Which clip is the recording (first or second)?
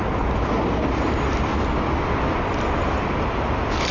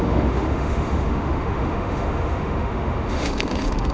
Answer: first